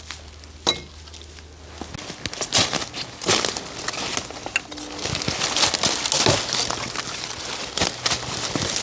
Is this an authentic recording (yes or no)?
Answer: yes